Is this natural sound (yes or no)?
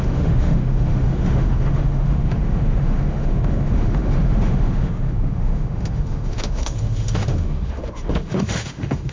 no